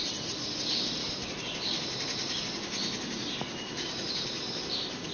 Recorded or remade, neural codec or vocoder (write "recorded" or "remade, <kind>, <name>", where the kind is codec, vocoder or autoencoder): recorded